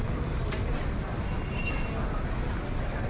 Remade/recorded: recorded